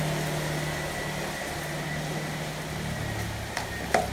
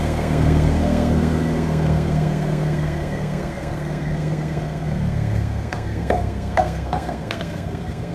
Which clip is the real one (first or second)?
first